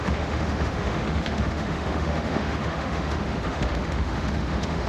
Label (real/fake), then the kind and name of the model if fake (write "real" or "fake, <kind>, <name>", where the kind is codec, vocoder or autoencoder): fake, autoencoder, DAC-VAE